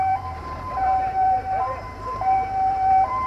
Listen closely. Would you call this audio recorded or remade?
remade